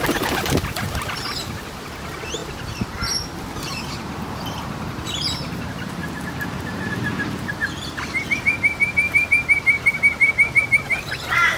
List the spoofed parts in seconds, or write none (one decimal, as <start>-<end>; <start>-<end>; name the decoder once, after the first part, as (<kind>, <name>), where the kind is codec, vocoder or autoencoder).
2.4-7.5 (vocoder, BigVGAN v2)